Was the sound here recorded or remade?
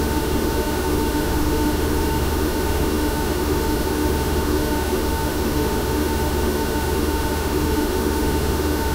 remade